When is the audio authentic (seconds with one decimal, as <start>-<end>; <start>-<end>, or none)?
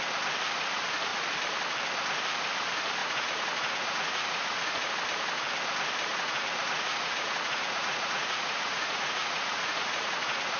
0.0-3.0; 4.9-6.1